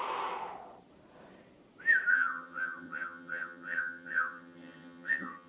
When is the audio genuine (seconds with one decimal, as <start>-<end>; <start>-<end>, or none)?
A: 0.0-2.1